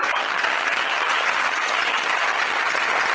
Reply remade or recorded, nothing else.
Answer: remade